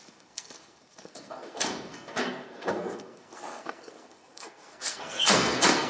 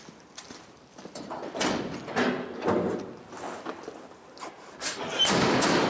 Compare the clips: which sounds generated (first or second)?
first